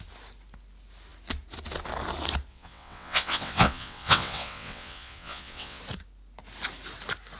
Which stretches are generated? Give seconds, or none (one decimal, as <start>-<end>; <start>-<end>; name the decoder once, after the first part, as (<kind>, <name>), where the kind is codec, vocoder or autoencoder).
2.5-5.8 (vocoder, WaveNeXt)